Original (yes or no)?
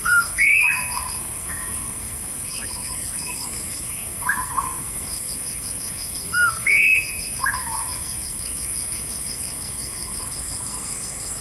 no